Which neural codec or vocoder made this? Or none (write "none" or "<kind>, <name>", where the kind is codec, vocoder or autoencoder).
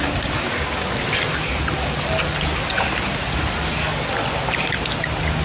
none